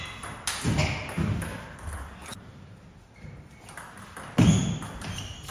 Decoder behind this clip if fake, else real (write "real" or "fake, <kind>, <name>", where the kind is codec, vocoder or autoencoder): real